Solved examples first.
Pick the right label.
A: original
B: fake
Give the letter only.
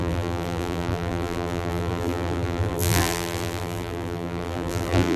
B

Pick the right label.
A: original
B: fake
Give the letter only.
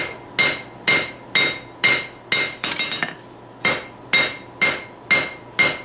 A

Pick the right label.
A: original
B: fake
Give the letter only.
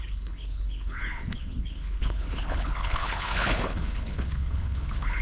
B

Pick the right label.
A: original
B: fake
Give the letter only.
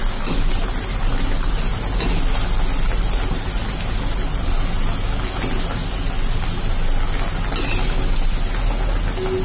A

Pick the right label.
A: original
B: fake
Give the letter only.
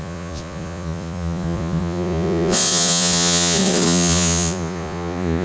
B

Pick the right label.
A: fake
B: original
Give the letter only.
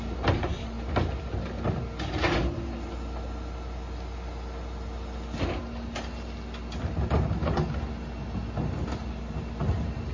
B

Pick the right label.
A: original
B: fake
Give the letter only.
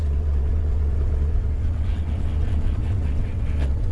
B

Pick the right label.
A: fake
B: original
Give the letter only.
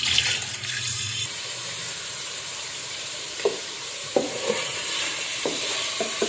A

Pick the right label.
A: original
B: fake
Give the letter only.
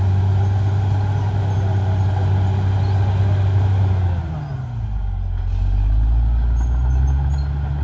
A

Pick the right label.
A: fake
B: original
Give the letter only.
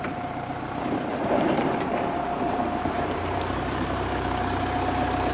A